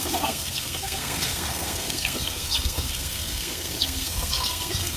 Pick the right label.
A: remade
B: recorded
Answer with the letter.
A